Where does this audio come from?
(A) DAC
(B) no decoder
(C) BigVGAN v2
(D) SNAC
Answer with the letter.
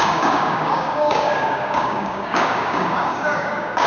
A